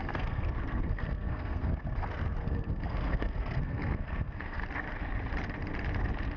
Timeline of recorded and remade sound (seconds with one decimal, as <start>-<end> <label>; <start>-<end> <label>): 0.0-4.6 remade; 4.6-6.4 recorded